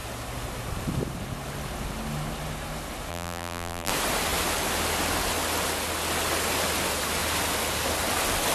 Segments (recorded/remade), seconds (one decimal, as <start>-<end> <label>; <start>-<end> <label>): 0.0-3.1 recorded; 3.1-3.9 remade; 3.9-8.5 recorded